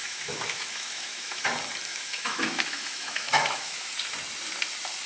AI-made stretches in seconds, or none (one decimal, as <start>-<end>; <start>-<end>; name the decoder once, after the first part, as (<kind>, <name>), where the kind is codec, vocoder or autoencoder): 0.0-1.4 (autoencoder, DAC-VAE); 1.9-3.9